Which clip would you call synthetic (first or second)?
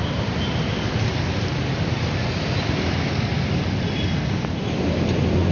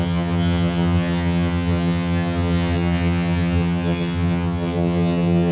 second